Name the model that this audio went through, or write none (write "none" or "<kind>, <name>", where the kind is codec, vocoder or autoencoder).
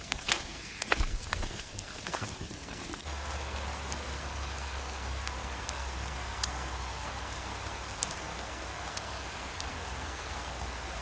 codec, SNAC